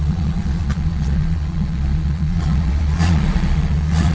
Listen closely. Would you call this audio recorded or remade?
remade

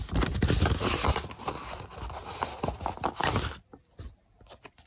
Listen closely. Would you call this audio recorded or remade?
recorded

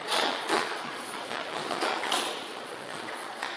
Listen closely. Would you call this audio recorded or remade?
remade